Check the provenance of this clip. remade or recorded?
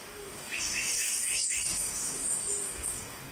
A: remade